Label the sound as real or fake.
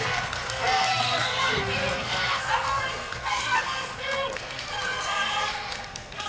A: fake